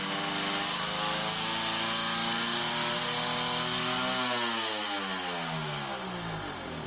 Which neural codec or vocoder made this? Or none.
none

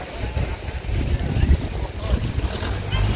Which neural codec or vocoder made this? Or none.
none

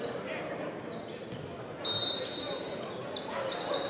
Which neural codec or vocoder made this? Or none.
none